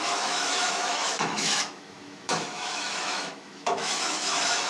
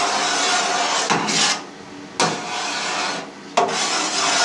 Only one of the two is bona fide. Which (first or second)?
second